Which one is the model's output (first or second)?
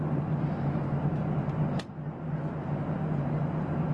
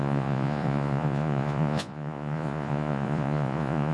second